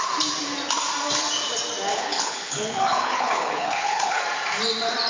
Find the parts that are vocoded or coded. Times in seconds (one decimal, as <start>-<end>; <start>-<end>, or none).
1.9-4.2